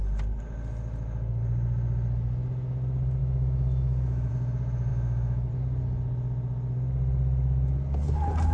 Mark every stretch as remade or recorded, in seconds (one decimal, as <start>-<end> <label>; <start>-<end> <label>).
0.0-3.2 recorded; 3.2-4.3 remade; 4.3-4.9 recorded; 4.9-5.5 remade; 5.5-8.5 recorded